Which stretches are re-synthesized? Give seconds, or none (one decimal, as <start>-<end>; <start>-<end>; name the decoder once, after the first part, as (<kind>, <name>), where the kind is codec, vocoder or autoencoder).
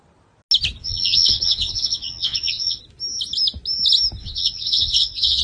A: 0.8-2.8 (vocoder, WaveNeXt); 4.2-5.4